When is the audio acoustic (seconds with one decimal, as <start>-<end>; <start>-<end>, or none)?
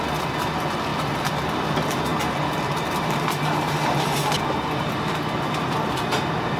0.0-6.6